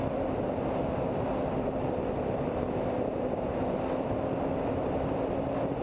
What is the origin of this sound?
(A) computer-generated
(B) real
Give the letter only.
B